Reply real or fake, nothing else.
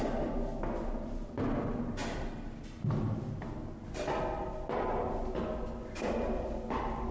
real